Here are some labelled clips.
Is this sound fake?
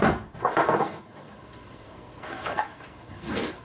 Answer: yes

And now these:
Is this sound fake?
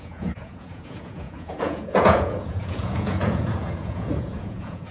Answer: yes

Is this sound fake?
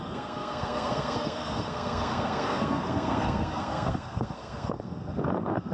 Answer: yes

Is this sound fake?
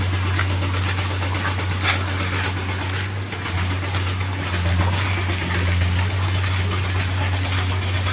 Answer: no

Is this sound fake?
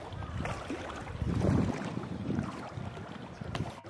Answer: yes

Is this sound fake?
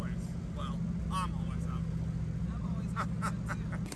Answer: no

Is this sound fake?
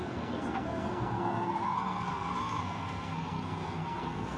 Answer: yes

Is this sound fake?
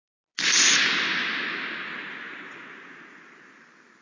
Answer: no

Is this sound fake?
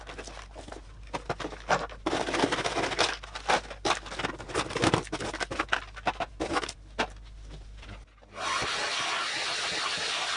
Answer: no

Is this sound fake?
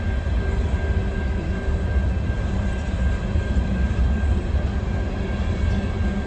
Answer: no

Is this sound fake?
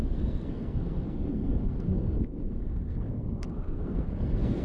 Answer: yes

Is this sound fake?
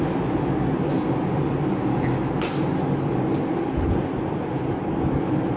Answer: no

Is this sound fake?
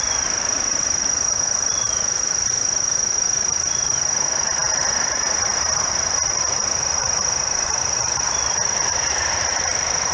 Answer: yes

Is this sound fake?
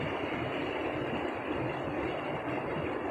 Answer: no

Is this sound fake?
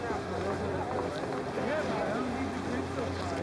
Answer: no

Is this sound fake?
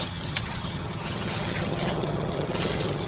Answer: yes